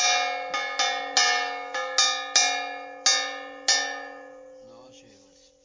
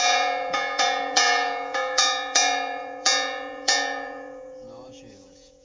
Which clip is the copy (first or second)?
second